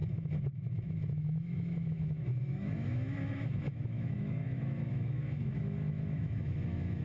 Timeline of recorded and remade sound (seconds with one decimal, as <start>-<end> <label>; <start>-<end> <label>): 0.0-7.0 remade

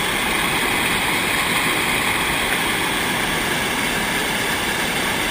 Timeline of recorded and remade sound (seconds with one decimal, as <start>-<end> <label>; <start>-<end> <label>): 0.0-4.2 recorded; 4.2-5.3 remade

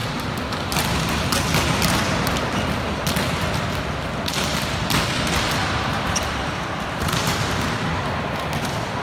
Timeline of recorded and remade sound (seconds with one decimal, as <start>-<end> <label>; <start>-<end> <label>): 0.0-5.6 recorded; 5.6-7.8 remade; 7.8-9.0 recorded

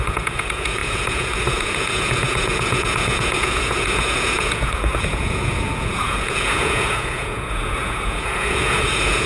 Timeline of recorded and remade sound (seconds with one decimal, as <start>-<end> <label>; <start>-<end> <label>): 0.0-9.3 remade

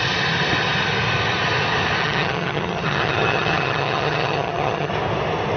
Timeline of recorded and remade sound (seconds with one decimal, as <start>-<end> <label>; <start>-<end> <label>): 0.0-2.0 recorded; 2.0-4.9 remade; 4.9-5.6 recorded

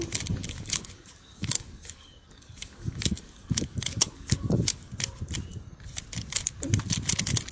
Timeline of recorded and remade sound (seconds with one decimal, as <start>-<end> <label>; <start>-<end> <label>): 0.0-0.4 recorded; 0.4-4.9 remade; 4.9-7.5 recorded

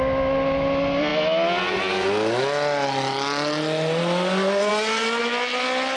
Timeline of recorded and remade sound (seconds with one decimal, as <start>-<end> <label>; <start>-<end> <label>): 0.0-6.0 recorded